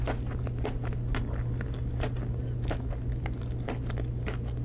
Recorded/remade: recorded